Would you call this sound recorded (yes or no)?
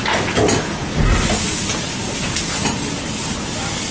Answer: yes